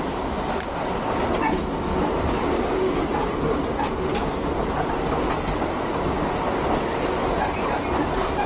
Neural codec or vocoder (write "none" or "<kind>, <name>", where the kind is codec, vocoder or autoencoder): none